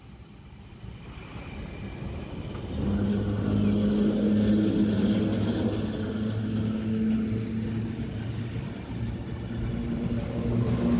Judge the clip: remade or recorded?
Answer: recorded